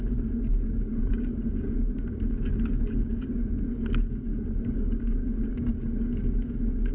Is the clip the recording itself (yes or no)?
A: no